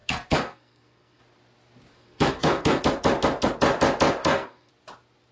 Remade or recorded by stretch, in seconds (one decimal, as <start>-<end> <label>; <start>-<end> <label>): 0.0-1.2 remade; 1.2-1.9 recorded; 1.9-2.8 remade; 2.8-4.2 recorded; 4.2-4.7 remade; 4.7-5.3 recorded